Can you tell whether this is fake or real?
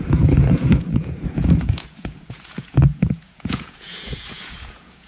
fake